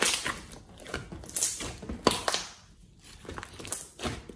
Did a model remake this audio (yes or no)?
no